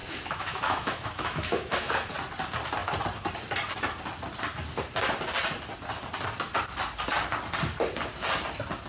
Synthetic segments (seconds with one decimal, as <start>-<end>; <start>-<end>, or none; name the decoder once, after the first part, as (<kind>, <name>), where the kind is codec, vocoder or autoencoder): 0.0-1.9 (autoencoder, DAC-VAE)